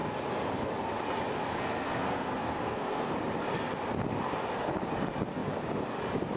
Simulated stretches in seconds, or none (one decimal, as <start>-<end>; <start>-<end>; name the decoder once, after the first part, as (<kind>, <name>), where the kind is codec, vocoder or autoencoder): 1.5-3.1 (codec, SNAC)

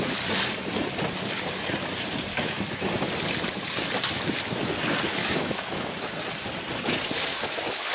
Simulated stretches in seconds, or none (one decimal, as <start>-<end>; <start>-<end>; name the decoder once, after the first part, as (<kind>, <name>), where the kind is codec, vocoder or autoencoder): 2.3-3.1 (autoencoder, DAC-VAE); 5.2-6.0; 7.3-7.9

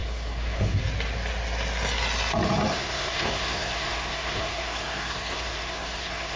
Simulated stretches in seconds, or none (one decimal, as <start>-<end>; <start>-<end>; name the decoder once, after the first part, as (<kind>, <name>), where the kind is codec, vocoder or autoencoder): 0.0-0.8 (codec, SNAC); 2.7-6.4

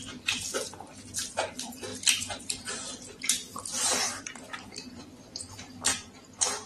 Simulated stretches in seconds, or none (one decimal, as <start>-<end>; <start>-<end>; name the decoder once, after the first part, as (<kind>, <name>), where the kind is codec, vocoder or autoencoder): 0.0-0.5 (vocoder, BigVGAN v2); 1.3-6.7

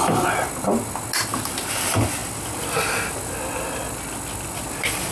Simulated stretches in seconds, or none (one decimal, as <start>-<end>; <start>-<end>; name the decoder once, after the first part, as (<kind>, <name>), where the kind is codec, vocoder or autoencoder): none

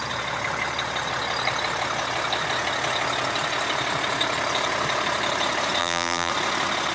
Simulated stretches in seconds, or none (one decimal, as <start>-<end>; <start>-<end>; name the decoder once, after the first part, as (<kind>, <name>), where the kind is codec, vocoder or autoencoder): 5.8-6.3 (vocoder, BigVGAN v2)

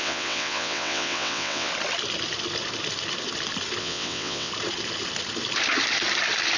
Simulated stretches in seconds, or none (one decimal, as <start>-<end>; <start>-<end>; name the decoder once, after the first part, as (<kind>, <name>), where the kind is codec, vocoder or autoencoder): 0.0-1.7 (vocoder, WaveNeXt); 3.8-4.5

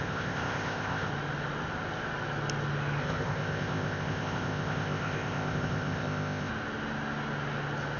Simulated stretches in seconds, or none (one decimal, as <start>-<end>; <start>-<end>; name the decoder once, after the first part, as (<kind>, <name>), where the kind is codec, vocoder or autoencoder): 0.0-1.1 (codec, ZipCodec); 3.0-6.5